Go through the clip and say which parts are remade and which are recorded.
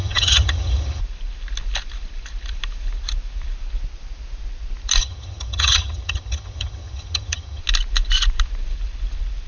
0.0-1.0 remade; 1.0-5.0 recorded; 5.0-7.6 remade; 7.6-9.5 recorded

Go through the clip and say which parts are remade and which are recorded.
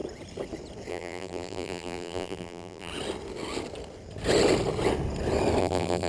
0.0-0.9 recorded; 0.9-2.9 remade; 2.9-5.6 recorded; 5.6-6.1 remade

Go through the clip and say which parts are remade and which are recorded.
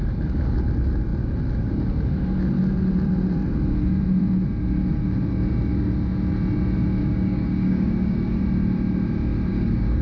0.0-7.0 recorded; 7.0-8.4 remade; 8.4-9.5 recorded; 9.5-10.0 remade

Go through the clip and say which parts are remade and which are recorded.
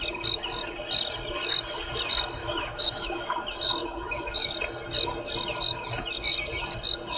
0.0-2.4 recorded; 2.4-3.2 remade; 3.2-3.8 recorded; 3.8-4.5 remade; 4.5-7.2 recorded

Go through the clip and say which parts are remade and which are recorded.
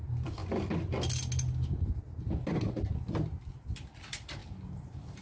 0.0-0.4 remade; 0.4-3.5 recorded; 3.5-5.2 remade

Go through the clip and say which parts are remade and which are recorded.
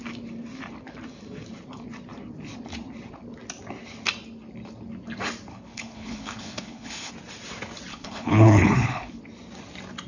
0.0-5.5 recorded; 5.5-7.1 remade; 7.1-7.9 recorded; 7.9-9.2 remade; 9.2-10.1 recorded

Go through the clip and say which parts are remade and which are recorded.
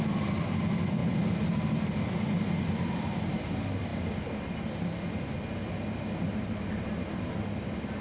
0.0-8.0 recorded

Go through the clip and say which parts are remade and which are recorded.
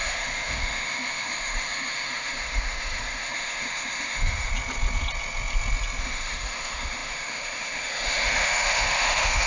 0.0-4.5 remade; 4.5-6.0 recorded; 6.0-9.5 remade